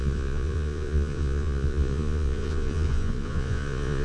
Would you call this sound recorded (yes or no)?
no